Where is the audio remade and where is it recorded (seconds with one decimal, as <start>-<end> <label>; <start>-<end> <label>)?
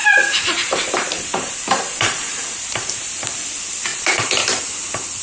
0.0-3.1 remade; 3.1-3.9 recorded; 3.9-4.6 remade; 4.6-5.2 recorded